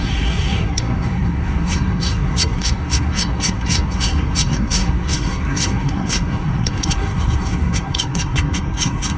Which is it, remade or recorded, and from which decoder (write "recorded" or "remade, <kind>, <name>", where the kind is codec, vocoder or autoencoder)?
remade, codec, SNAC